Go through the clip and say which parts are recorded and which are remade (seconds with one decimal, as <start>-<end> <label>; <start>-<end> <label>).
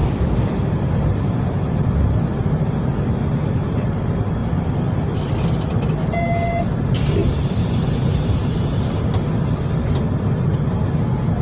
0.0-0.5 remade; 0.5-7.2 recorded; 7.2-7.7 remade; 7.7-11.4 recorded